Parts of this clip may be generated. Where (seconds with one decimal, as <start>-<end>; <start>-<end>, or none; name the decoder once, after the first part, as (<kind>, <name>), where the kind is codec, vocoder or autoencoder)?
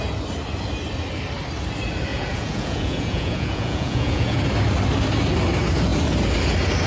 2.1-4.4 (vocoder, Vocos)